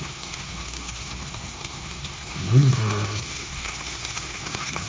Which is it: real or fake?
fake